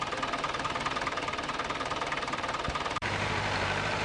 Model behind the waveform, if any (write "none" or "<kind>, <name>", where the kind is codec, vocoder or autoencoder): vocoder, BigVGAN v2